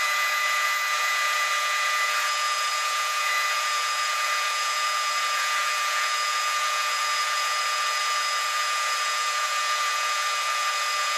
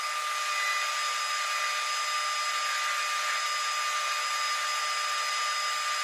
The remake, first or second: first